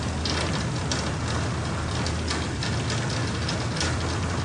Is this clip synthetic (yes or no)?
no